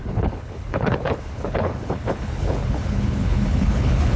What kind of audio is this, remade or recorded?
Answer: remade